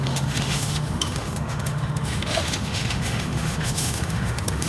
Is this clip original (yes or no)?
no